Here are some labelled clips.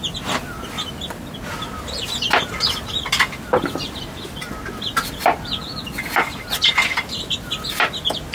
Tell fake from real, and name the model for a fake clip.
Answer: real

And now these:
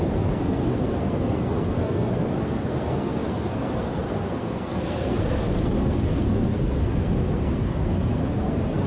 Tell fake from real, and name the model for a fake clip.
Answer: fake, codec, SNAC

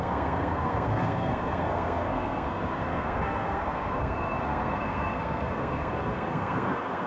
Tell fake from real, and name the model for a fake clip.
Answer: fake, codec, SNAC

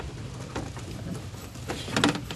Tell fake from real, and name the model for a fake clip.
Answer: real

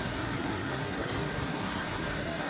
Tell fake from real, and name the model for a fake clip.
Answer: fake, codec, SNAC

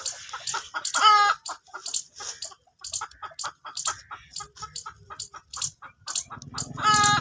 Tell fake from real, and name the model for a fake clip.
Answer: real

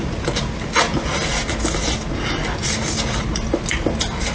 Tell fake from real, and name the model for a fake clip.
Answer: real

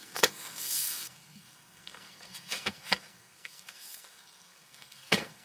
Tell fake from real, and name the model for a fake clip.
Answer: fake, codec, SNAC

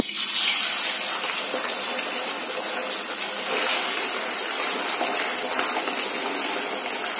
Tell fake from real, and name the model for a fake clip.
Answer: real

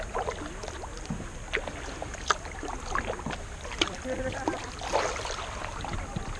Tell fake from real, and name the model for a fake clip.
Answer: real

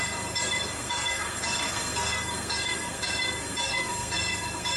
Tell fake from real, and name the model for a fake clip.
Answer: fake, codec, SNAC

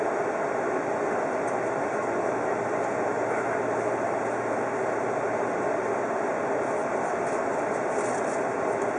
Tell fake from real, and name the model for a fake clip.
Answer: real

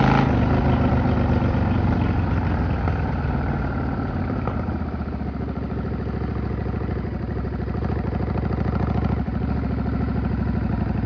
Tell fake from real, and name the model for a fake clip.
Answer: real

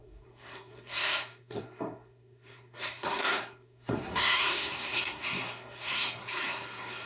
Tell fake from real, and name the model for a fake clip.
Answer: fake, codec, SNAC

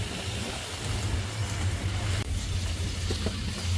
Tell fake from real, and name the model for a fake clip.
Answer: real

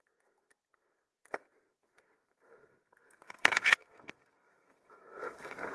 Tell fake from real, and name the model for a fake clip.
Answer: fake, codec, SNAC